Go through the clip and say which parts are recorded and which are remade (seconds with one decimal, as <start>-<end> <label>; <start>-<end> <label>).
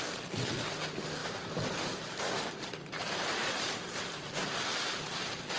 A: 0.0-1.2 recorded; 1.2-4.3 remade; 4.3-5.6 recorded